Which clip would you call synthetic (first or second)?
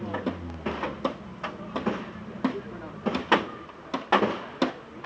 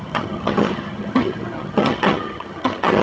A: second